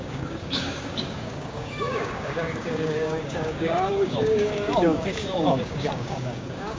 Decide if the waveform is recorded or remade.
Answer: remade